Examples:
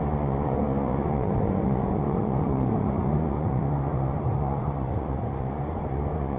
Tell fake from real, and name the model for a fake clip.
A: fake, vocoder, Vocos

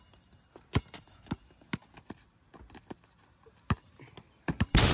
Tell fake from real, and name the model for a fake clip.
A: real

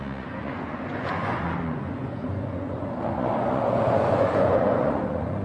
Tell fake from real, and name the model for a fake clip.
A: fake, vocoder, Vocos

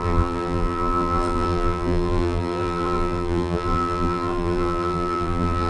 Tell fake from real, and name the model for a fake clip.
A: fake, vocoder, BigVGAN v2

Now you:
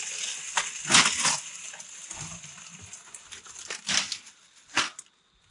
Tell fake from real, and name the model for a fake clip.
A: real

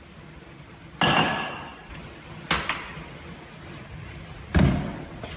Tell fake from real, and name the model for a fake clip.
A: real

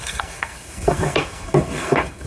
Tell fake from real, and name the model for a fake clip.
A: fake, codec, SNAC